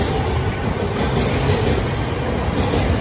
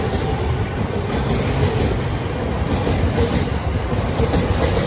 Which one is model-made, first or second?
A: second